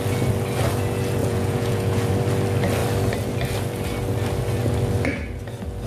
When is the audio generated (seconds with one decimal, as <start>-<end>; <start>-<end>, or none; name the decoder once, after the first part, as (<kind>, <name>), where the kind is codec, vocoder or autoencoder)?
1.2-2.1 (vocoder, Vocos)